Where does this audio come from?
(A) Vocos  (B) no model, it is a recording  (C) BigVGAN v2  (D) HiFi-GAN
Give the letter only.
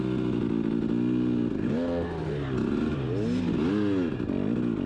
B